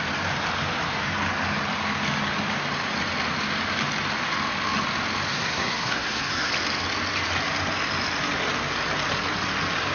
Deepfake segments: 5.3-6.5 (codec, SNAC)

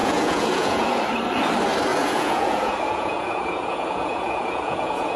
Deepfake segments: 0.0-1.0 (vocoder, Vocos); 1.9-5.2

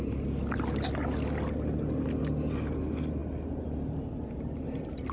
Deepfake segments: none

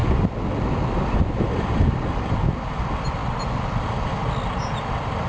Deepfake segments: none